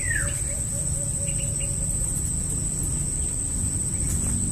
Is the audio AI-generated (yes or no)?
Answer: no